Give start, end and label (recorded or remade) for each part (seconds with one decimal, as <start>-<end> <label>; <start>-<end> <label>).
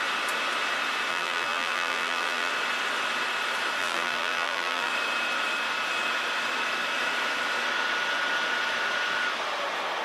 0.0-1.1 recorded; 1.1-2.5 remade; 2.5-3.8 recorded; 3.8-4.9 remade; 4.9-10.0 recorded